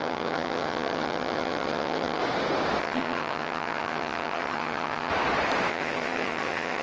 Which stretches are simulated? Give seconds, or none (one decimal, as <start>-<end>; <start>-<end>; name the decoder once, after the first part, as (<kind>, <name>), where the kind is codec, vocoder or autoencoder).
0.0-2.2 (vocoder, HiFi-GAN); 2.8-5.1; 5.7-6.8